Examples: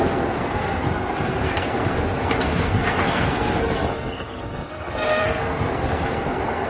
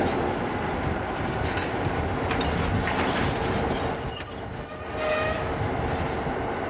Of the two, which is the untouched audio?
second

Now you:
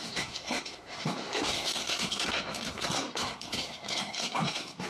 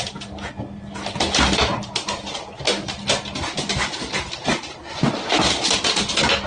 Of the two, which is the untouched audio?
second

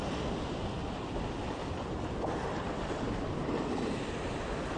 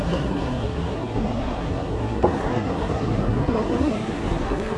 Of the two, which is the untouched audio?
first